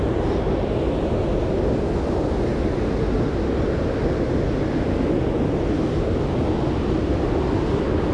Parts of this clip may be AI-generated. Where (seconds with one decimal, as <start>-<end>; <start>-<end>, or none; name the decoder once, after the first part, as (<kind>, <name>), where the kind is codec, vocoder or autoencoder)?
none